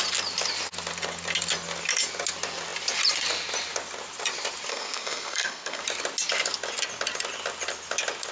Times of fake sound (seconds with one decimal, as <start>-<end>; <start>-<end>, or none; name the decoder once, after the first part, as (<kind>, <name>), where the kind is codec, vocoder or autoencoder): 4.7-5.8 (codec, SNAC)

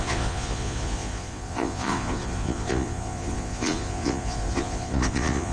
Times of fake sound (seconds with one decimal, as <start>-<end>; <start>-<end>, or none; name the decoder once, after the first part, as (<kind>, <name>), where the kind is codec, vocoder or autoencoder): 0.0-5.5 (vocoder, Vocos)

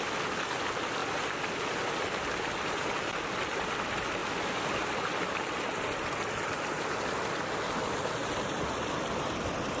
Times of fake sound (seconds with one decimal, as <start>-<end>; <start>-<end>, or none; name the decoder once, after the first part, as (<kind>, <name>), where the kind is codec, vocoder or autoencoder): none